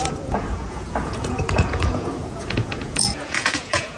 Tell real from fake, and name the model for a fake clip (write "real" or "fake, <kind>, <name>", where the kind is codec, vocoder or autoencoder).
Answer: fake, vocoder, Vocos